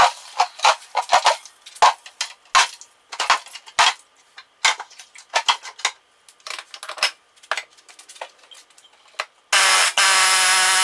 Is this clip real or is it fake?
real